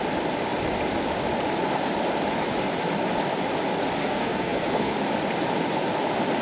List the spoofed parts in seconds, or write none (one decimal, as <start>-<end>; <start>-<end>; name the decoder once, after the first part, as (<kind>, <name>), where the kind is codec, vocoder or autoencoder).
4.0-4.9 (codec, SNAC)